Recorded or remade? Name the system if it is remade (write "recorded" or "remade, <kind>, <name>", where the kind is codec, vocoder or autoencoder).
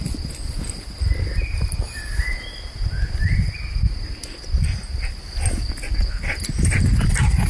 recorded